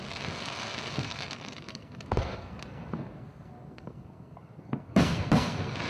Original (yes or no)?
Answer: no